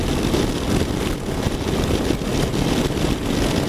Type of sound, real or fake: real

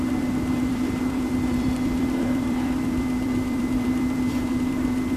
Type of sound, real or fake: fake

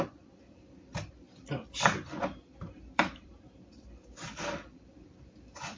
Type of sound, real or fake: fake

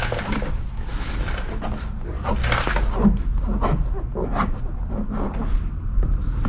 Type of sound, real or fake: real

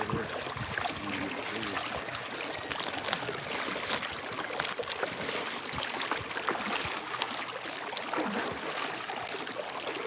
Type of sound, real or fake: real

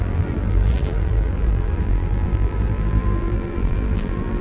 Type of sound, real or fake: fake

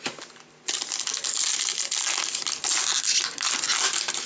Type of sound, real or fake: real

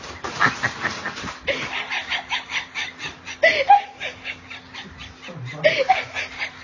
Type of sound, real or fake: real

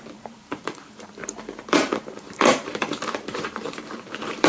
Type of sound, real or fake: fake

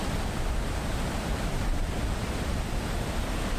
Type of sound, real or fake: real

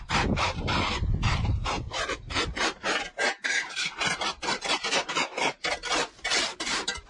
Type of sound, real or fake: fake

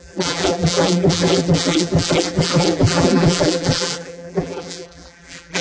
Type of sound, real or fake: fake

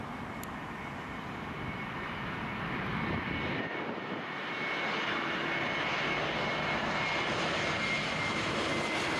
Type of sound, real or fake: real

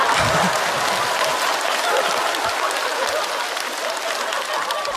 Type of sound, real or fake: real